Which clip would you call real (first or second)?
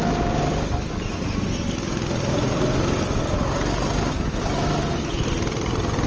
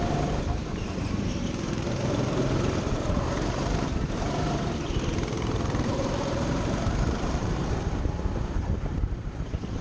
first